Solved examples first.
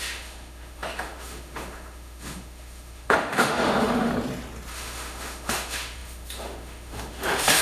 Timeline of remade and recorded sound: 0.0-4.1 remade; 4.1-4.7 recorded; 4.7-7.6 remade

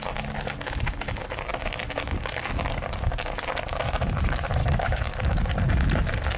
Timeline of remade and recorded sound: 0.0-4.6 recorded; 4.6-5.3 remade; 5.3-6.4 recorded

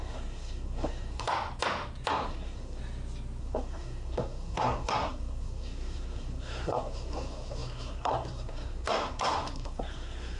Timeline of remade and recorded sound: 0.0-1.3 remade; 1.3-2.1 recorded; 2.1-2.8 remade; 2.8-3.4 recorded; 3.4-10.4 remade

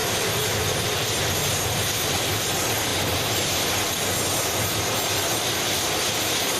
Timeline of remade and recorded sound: 0.0-6.6 recorded

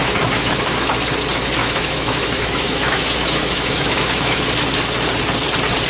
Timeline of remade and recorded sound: 0.0-0.9 remade; 0.9-1.6 recorded; 1.6-4.4 remade; 4.4-5.9 recorded